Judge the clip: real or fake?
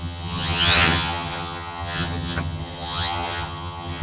fake